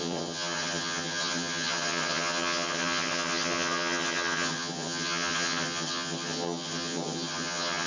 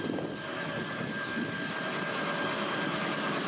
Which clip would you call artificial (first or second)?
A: first